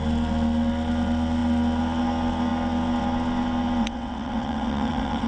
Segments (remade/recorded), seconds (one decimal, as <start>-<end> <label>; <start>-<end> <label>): 0.0-3.8 recorded; 3.8-5.3 remade